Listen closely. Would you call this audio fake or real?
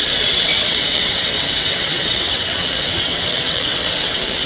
fake